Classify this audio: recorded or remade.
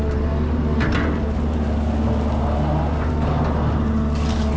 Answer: recorded